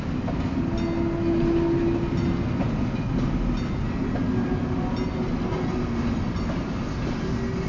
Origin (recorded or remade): recorded